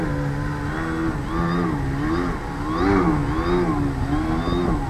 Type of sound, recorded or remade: recorded